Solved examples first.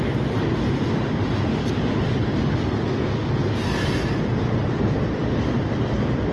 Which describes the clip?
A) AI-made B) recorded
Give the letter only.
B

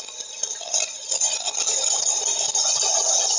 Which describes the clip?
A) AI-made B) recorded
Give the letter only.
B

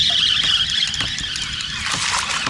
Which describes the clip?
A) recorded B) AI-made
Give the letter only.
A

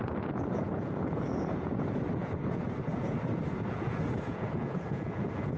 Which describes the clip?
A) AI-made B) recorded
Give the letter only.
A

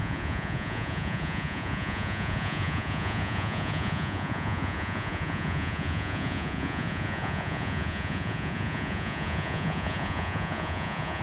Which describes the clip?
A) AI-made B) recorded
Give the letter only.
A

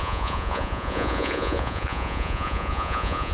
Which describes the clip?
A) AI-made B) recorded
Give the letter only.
A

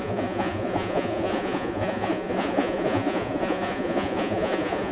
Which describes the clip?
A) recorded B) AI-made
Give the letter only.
B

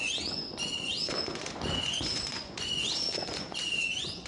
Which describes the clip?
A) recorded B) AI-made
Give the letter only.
B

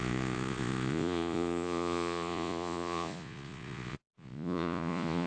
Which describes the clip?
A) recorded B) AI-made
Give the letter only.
B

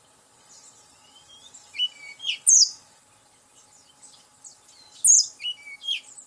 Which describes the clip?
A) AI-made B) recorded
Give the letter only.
B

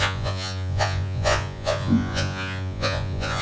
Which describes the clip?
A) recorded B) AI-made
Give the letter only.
B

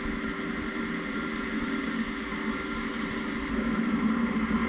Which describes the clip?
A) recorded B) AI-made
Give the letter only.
A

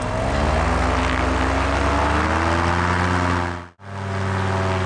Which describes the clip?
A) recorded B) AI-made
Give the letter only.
A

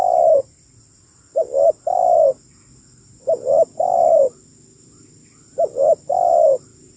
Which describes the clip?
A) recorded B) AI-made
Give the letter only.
A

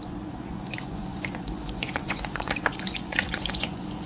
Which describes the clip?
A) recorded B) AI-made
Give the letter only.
B